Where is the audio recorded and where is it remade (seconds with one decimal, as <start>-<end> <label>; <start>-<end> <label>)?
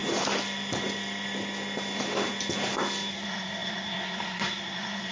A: 0.0-3.1 recorded; 3.1-5.1 remade